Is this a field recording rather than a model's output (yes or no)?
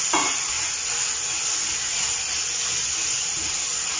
yes